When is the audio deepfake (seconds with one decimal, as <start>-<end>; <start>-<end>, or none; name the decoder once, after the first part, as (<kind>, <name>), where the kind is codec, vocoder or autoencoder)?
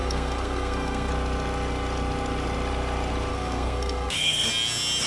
0.0-1.1 (codec, SNAC); 3.3-4.5